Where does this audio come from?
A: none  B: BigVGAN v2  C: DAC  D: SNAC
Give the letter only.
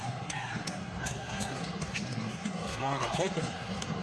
D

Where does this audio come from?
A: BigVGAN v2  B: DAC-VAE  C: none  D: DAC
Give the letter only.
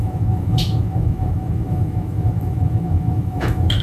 B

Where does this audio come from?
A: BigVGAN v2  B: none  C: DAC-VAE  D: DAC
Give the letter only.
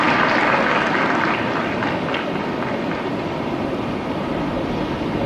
B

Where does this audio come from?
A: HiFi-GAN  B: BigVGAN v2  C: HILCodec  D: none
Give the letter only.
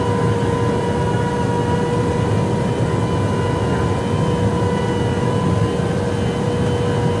D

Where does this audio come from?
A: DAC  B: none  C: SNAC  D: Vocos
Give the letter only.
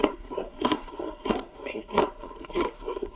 C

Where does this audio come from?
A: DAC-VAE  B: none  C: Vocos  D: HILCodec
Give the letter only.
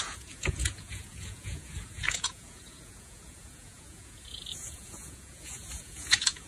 C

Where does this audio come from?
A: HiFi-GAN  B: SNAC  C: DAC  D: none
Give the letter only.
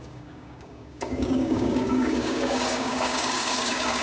C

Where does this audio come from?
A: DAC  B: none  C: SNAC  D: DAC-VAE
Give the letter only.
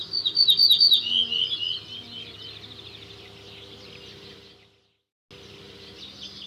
B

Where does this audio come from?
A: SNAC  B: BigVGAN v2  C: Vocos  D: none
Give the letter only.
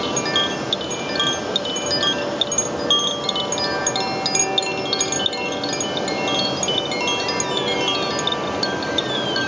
D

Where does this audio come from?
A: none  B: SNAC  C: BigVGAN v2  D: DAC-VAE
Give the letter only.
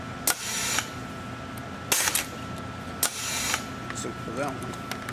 A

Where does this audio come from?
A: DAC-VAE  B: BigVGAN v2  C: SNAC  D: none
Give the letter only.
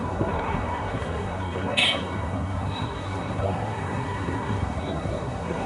C